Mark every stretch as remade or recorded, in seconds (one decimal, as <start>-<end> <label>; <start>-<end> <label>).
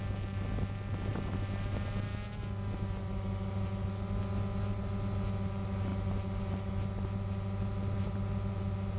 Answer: 0.0-1.1 recorded; 1.1-4.2 remade; 4.2-5.9 recorded; 5.9-6.4 remade; 6.4-9.0 recorded